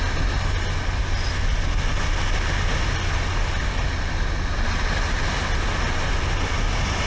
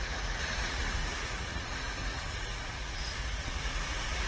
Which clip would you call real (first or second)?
first